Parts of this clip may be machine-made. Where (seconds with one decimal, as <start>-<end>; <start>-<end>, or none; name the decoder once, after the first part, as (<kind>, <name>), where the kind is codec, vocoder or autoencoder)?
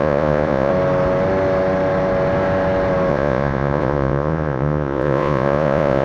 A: 0.0-0.7 (vocoder, Vocos); 3.1-6.0